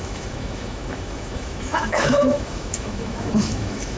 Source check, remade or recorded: remade